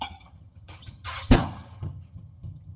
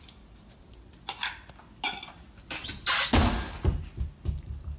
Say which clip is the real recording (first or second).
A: second